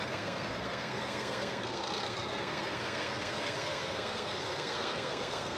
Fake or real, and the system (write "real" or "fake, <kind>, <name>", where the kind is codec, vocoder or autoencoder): fake, codec, SNAC